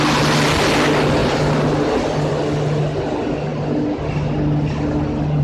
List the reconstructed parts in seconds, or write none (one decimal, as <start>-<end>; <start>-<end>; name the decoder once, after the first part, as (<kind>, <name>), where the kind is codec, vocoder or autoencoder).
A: 1.2-2.3 (vocoder, BigVGAN v2)